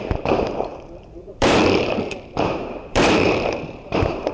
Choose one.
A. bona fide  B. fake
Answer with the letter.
B